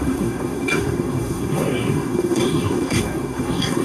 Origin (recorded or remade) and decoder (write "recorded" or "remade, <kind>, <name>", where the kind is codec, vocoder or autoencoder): remade, codec, SNAC